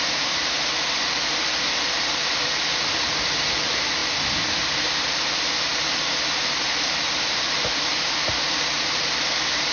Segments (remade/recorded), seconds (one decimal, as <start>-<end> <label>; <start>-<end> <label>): 0.0-9.7 recorded

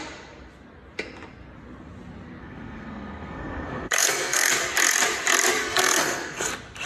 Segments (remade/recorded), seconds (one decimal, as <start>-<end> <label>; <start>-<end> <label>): 0.0-2.4 recorded; 2.4-4.5 remade; 4.5-5.6 recorded; 5.6-6.5 remade; 6.5-6.9 recorded

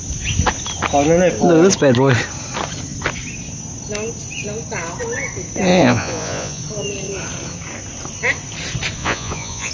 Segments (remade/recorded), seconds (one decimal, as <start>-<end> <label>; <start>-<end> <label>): 0.0-5.7 recorded; 5.7-6.6 remade; 6.6-9.0 recorded; 9.0-9.7 remade